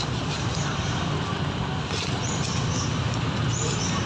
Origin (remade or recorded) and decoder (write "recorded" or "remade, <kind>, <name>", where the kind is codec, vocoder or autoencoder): recorded